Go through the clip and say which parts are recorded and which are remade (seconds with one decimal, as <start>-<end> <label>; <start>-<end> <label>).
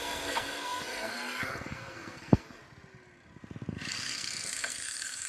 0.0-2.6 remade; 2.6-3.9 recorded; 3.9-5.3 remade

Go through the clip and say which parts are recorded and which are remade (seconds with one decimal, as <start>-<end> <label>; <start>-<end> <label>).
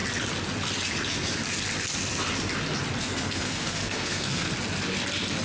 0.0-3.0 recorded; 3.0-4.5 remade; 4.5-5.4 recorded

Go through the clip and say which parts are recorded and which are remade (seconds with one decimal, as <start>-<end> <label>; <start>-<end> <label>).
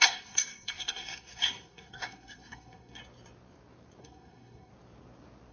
0.0-3.0 remade; 3.0-4.0 recorded; 4.0-4.7 remade; 4.7-5.5 recorded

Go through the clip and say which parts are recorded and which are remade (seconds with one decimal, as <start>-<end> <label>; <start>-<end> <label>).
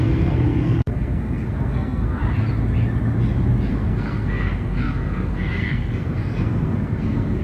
0.0-2.2 remade; 2.2-3.7 recorded; 3.7-7.4 remade